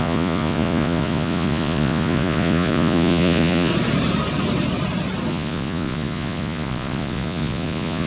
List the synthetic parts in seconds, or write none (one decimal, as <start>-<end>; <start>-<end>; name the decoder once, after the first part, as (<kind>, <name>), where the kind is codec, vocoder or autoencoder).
0.0-3.7 (vocoder, Vocos); 5.3-8.1